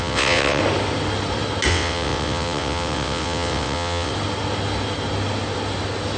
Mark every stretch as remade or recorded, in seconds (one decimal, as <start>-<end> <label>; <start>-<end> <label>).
0.0-0.6 remade; 0.6-1.7 recorded; 1.7-4.1 remade; 4.1-6.2 recorded